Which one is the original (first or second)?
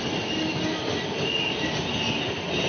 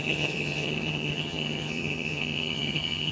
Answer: first